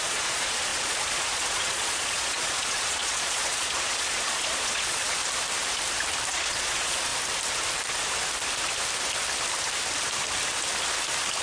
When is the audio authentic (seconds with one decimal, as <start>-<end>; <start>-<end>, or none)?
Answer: 5.2-6.3; 7.1-11.4